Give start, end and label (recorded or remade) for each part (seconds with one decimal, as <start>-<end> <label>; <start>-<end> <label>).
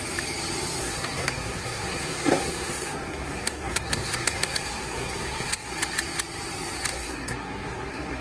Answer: 0.0-0.8 recorded; 0.8-5.7 remade; 5.7-6.9 recorded; 6.9-8.2 remade